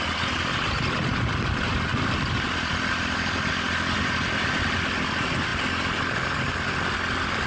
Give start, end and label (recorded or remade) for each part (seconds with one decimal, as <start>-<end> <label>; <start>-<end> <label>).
0.0-7.5 recorded